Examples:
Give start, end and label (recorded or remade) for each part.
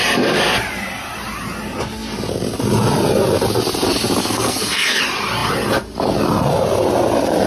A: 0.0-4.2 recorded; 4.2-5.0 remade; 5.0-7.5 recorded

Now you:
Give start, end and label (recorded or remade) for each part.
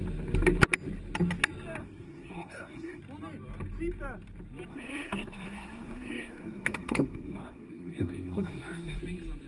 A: 0.0-1.8 recorded; 1.8-3.0 remade; 3.0-4.7 recorded; 4.7-9.0 remade; 9.0-9.5 recorded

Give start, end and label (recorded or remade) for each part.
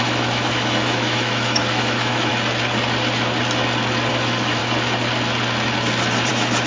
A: 0.0-2.3 remade; 2.3-4.1 recorded; 4.1-4.6 remade; 4.6-6.3 recorded; 6.3-6.7 remade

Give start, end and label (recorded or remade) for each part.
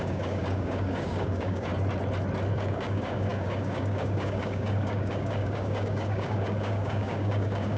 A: 0.0-1.7 remade; 1.7-2.5 recorded; 2.5-7.8 remade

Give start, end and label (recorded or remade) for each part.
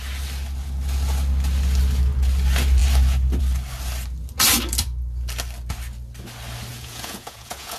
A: 0.0-6.7 recorded; 6.7-7.8 remade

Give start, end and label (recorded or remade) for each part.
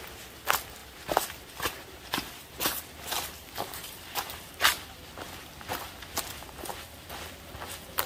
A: 0.0-0.8 recorded; 0.8-4.6 remade; 4.6-8.1 recorded